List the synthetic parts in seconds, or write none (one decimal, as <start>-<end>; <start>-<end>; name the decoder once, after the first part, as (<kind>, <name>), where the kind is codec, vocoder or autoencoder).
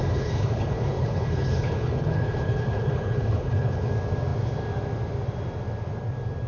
0.0-3.9 (codec, HILCodec)